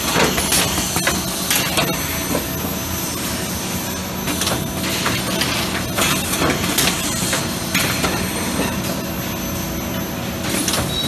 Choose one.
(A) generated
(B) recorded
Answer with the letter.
B